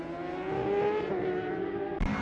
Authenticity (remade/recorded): recorded